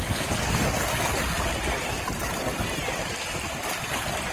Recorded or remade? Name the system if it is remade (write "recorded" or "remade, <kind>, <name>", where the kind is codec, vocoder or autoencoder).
recorded